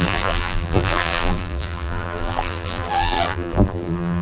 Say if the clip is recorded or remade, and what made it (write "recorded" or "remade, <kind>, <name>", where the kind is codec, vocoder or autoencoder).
remade, vocoder, BigVGAN v2